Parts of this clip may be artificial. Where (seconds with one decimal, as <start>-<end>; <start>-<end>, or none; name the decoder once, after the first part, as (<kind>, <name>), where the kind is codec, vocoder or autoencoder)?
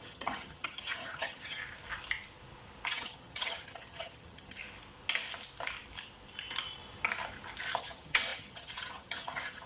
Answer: 0.0-1.6 (vocoder, HiFi-GAN); 2.9-4.6; 7.8-9.7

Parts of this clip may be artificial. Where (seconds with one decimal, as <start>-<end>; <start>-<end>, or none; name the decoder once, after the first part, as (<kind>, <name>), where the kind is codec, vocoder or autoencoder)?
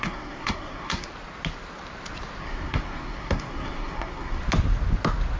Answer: 0.0-1.1 (codec, SNAC); 2.4-4.4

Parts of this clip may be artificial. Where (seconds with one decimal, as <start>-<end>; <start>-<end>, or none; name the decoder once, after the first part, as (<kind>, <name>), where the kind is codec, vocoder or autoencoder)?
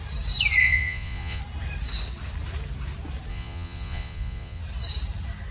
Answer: 0.6-1.4 (vocoder, Vocos); 3.3-4.6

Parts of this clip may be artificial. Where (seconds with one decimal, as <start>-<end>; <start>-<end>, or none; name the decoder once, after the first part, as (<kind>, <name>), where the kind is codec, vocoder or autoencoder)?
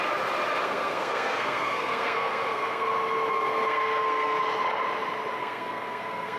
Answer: 0.6-2.9 (codec, SNAC); 3.3-4.4; 5.4-6.4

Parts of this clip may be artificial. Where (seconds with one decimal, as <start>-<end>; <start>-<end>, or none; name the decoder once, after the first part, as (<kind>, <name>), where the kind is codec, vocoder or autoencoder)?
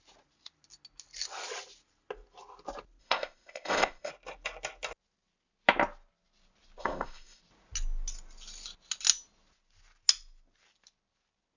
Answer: 3.0-4.1 (codec, ZipCodec); 6.8-7.4